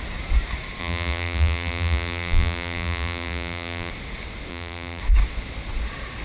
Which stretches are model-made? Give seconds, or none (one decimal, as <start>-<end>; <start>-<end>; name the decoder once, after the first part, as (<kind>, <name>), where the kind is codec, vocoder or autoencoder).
0.8-3.9 (vocoder, BigVGAN v2); 4.5-5.0